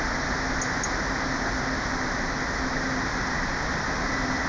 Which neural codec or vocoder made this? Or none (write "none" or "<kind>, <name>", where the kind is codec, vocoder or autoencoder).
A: none